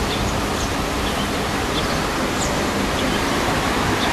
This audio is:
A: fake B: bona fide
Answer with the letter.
B